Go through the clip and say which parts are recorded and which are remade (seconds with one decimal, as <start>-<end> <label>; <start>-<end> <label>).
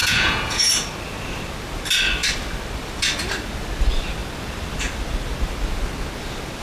0.0-0.7 remade; 0.7-6.6 recorded